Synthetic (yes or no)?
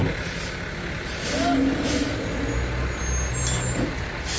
no